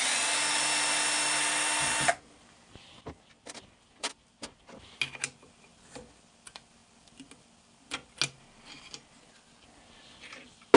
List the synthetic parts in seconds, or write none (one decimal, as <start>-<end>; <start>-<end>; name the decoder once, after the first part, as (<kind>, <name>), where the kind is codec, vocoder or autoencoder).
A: none